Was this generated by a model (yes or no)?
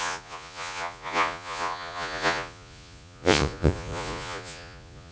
yes